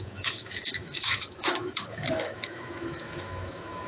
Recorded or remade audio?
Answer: remade